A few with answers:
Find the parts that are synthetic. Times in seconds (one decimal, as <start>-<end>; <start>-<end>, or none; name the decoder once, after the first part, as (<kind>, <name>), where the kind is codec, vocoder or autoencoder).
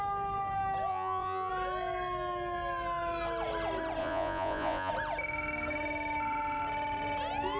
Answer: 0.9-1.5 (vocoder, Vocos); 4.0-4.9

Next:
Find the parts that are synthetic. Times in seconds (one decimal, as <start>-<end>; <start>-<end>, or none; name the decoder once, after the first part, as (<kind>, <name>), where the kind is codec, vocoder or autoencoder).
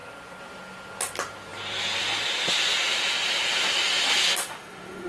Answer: 4.4-5.1 (autoencoder, DAC-VAE)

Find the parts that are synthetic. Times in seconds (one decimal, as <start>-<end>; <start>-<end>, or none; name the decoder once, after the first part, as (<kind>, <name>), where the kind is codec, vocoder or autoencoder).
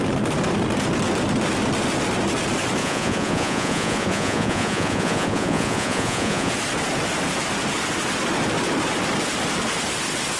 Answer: 2.8-6.5 (vocoder, Vocos)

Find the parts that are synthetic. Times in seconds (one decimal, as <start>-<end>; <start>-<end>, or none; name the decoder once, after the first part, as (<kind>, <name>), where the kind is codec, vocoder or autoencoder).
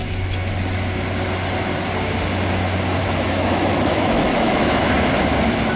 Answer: 0.0-0.5 (autoencoder, DAC-VAE); 3.0-4.8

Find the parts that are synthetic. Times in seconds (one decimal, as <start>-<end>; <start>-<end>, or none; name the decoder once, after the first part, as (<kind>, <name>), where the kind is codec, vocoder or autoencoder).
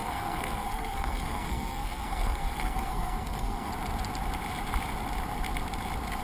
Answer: 0.0-3.7 (codec, SNAC)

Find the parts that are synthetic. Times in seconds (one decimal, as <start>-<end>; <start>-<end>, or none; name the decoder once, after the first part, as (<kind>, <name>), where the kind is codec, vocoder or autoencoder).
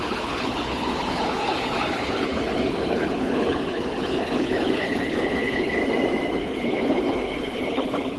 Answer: 0.0-5.8 (codec, HILCodec); 6.4-8.2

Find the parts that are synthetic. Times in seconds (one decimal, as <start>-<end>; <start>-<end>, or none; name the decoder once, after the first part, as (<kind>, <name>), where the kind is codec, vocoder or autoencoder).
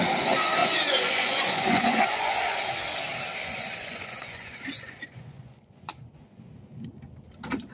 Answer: 0.6-2.7 (vocoder, Vocos); 3.4-6.5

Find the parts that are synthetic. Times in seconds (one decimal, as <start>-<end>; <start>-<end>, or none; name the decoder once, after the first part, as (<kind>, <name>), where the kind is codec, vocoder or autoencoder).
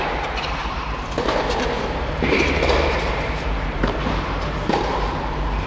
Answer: 0.0-5.7 (vocoder, BigVGAN v2)